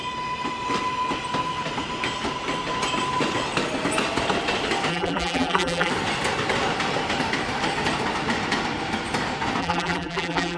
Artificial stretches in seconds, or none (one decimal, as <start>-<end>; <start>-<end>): 4.9-5.9; 9.6-10.6

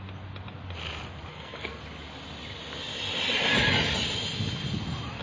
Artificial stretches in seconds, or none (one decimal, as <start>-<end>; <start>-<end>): 1.3-1.8

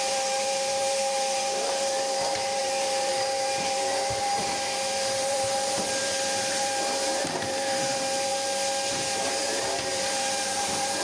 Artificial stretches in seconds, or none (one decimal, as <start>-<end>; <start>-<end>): 0.0-8.3; 8.9-11.0

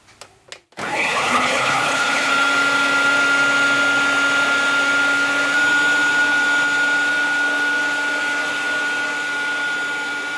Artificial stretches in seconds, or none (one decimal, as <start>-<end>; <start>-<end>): 0.9-2.3